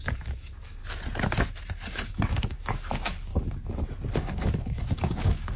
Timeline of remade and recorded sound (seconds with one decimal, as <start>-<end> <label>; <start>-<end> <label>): 0.0-0.8 remade; 0.8-1.7 recorded; 1.7-3.3 remade; 3.3-4.1 recorded; 4.1-5.6 remade